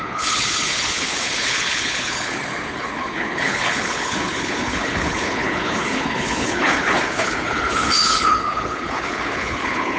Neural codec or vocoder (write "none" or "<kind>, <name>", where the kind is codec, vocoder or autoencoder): codec, HILCodec